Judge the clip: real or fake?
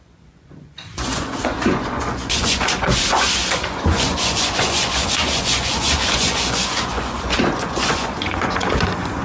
fake